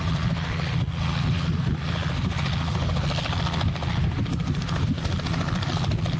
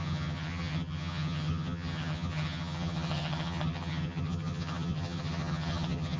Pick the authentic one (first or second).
first